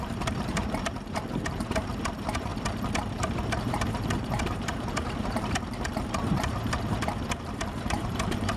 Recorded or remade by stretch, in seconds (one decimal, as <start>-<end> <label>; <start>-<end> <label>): 0.0-2.5 remade; 2.5-3.0 recorded; 3.0-8.6 remade